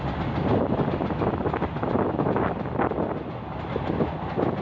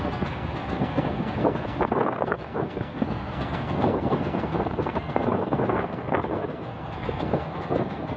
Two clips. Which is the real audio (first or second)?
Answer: first